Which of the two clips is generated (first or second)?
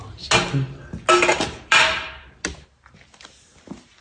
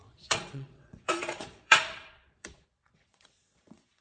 second